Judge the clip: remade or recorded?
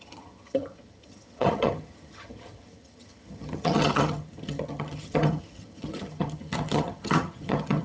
remade